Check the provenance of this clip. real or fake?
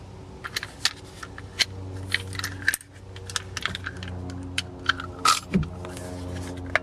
real